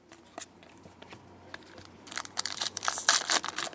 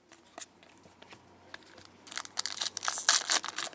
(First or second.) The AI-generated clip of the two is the first